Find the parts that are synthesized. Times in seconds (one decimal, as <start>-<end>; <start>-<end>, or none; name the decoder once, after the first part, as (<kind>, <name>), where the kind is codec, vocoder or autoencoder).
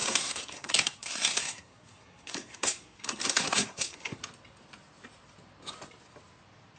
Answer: 0.0-4.2 (codec, SNAC)